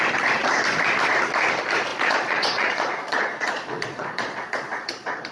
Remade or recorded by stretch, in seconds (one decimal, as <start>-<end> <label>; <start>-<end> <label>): 0.0-1.9 recorded; 1.9-5.3 remade